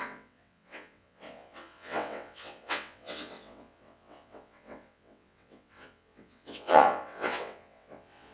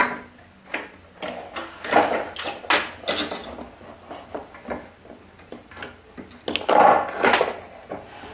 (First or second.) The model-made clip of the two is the first